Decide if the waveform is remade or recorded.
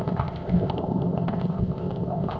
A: remade